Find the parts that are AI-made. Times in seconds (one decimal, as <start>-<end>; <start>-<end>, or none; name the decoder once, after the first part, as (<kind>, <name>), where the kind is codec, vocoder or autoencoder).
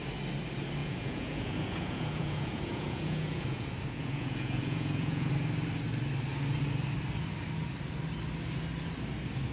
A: 0.8-5.3 (vocoder, Vocos)